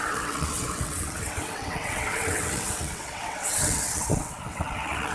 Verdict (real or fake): fake